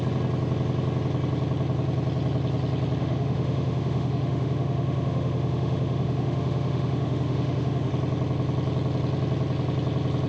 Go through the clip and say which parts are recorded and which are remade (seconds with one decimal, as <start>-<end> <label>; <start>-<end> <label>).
0.0-3.0 recorded; 3.0-7.9 remade; 7.9-10.3 recorded